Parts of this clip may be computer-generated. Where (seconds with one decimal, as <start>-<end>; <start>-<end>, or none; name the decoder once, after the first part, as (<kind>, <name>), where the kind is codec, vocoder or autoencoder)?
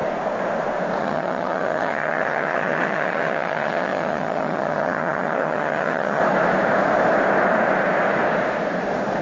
1.0-6.2 (vocoder, HiFi-GAN)